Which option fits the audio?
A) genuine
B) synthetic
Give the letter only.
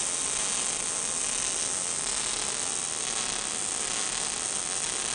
A